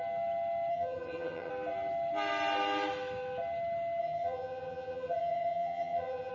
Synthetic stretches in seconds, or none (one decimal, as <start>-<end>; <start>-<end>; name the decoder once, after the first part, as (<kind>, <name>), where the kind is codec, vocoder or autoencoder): 0.7-1.5 (vocoder, HiFi-GAN); 4.0-6.3